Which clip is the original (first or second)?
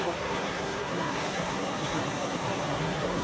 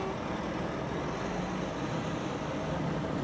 second